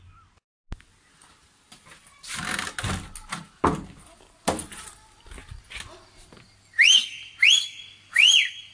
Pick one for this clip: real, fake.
real